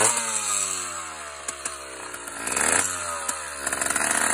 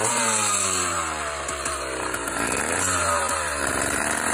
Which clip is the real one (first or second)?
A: first